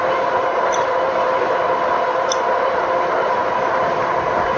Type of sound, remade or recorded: recorded